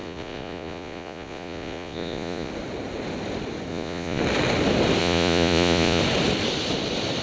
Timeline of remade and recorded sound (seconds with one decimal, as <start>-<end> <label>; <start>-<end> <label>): 0.0-2.5 remade; 2.5-3.7 recorded; 3.7-4.2 remade; 4.2-5.0 recorded; 5.0-6.0 remade; 6.0-7.2 recorded